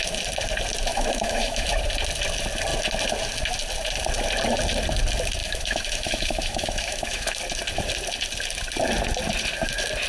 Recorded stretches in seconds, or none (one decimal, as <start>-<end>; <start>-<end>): 0.0-0.9; 1.7-5.4; 7.4-10.1